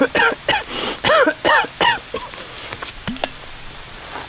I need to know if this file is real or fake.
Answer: real